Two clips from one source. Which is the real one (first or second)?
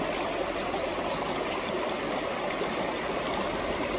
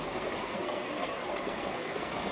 first